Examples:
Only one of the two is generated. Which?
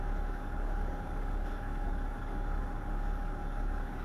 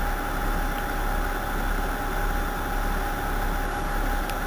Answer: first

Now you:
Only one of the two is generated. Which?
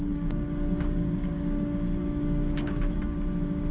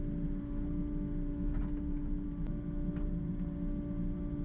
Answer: first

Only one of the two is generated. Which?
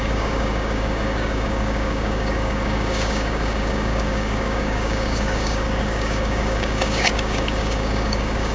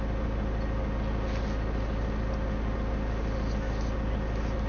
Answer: first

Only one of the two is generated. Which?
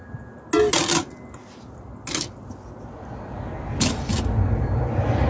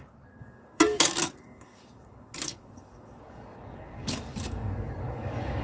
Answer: second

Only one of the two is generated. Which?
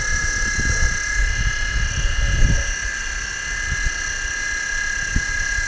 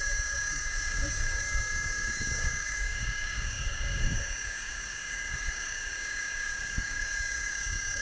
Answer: second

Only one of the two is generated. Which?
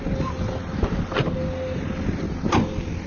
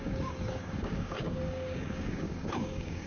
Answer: second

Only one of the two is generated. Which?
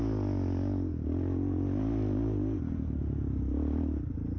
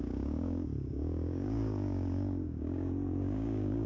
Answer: second